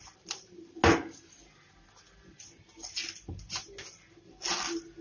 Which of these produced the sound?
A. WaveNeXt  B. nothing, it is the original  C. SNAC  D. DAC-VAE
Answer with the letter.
B